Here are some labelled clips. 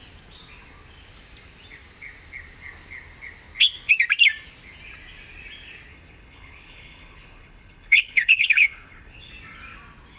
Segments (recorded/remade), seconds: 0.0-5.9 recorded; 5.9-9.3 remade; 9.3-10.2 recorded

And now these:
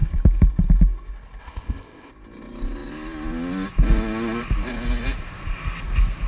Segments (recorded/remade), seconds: 0.0-1.4 recorded; 1.4-2.1 remade; 2.1-6.3 recorded

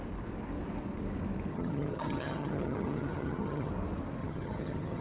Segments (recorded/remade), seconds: 0.0-1.5 recorded; 1.5-3.7 remade; 3.7-4.2 recorded; 4.2-5.0 remade